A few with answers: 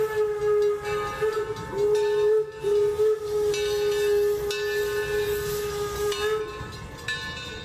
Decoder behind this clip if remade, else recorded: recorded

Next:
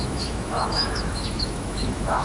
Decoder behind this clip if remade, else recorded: remade, autoencoder, DAC-VAE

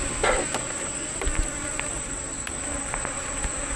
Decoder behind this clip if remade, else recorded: recorded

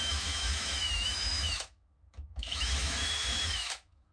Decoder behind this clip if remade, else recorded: remade, autoencoder, DAC-VAE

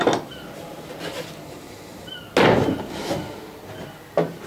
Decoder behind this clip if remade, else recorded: recorded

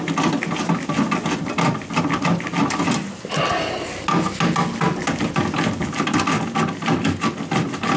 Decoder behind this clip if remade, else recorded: recorded